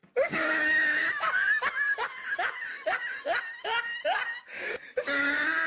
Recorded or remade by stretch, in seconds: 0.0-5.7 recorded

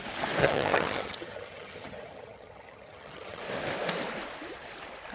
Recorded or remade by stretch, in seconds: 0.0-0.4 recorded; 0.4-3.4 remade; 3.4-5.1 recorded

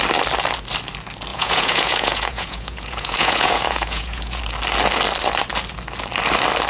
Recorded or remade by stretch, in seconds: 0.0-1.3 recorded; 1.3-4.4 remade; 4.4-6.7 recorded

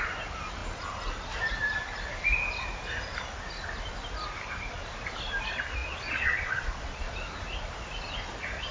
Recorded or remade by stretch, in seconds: 0.0-5.8 recorded; 5.8-7.1 remade; 7.1-8.7 recorded

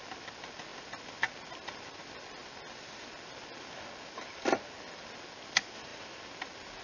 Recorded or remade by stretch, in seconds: 0.0-6.8 recorded

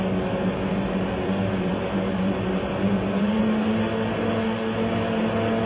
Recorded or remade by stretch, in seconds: 0.0-0.7 recorded; 0.7-3.4 remade; 3.4-5.7 recorded